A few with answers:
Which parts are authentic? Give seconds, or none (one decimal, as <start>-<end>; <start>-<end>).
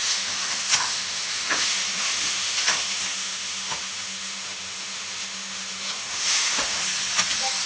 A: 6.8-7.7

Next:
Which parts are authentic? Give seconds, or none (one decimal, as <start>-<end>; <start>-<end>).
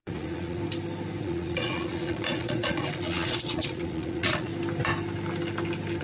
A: 0.6-1.2; 4.5-6.0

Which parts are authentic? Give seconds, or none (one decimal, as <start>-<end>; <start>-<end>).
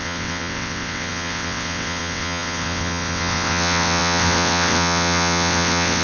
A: none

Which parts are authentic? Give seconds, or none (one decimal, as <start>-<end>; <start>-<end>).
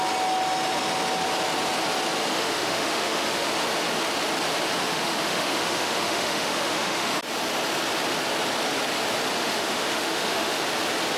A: 0.0-2.3; 3.5-4.8; 7.2-9.4; 10.6-11.2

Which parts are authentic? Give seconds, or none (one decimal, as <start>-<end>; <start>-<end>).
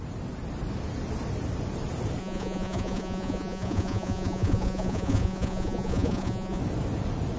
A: 0.0-2.2; 6.6-7.4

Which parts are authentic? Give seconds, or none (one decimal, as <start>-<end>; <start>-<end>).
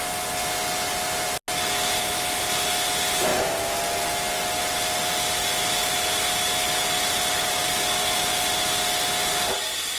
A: 0.0-10.0